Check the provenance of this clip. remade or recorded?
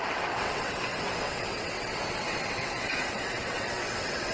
remade